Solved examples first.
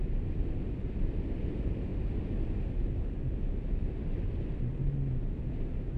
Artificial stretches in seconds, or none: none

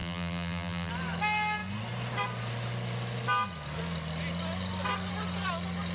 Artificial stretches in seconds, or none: 0.0-0.9 (vocoder, BigVGAN v2)